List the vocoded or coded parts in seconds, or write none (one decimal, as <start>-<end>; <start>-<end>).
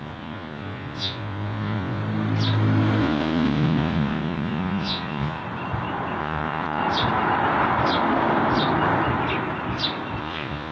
0.0-2.0; 3.0-5.4; 6.2-6.8; 10.2-10.7